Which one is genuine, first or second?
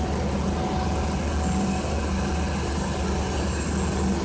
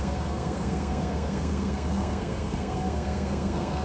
first